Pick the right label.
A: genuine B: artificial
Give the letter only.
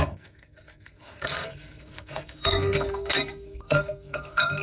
B